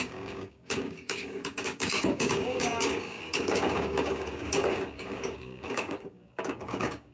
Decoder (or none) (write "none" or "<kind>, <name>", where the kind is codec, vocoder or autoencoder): codec, DAC